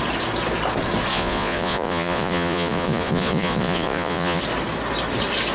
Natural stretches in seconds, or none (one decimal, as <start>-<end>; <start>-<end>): 0.0-1.1; 4.4-5.5